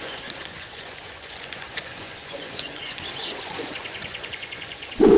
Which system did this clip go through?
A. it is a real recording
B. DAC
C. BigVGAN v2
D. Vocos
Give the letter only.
D